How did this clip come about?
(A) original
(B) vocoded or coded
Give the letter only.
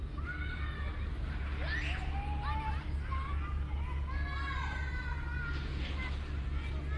A